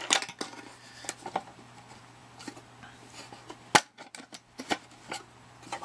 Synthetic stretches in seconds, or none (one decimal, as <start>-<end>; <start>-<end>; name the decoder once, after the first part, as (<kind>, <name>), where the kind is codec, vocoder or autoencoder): none